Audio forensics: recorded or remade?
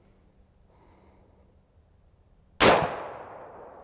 recorded